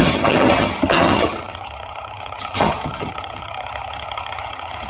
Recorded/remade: remade